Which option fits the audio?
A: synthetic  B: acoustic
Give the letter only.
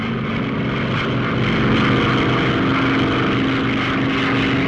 B